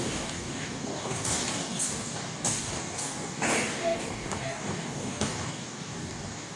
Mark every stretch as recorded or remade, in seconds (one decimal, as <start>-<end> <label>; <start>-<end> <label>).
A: 0.0-6.6 remade